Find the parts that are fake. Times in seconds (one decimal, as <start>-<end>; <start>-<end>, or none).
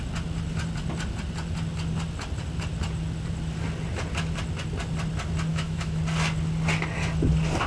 5.5-6.0